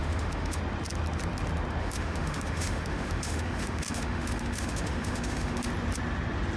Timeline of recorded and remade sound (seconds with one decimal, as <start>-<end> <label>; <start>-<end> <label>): 0.0-0.6 remade; 0.6-1.8 recorded; 1.8-5.7 remade; 5.7-6.6 recorded